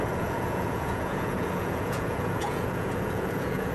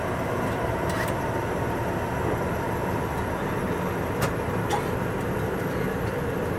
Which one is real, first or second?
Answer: second